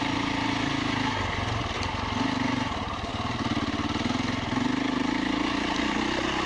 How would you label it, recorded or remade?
recorded